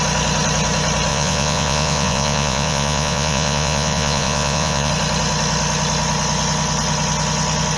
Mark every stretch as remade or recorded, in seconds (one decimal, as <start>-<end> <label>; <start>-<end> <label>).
0.0-1.1 recorded; 1.1-4.9 remade; 4.9-7.8 recorded